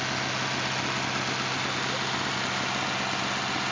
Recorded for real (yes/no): yes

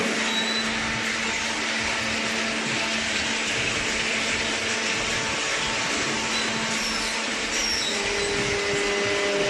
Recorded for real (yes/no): yes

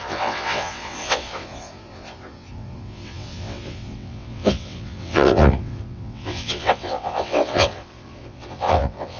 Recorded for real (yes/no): no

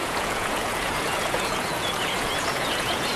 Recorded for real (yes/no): no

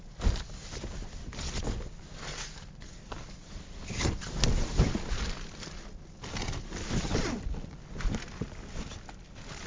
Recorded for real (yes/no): yes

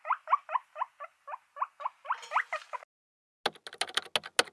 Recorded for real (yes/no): yes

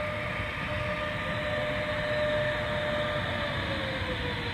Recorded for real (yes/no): yes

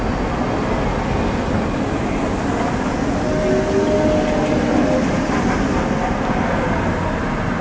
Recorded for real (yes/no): yes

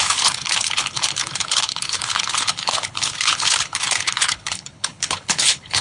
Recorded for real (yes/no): no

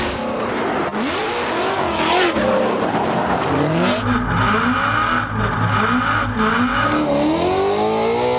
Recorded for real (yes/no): yes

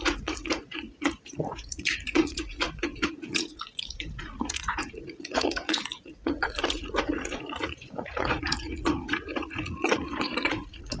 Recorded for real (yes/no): no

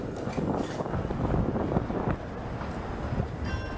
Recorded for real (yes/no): yes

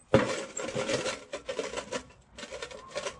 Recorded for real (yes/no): yes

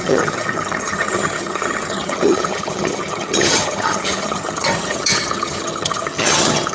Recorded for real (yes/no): no